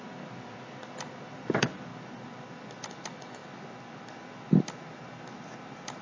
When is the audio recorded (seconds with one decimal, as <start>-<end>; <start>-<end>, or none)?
0.0-6.0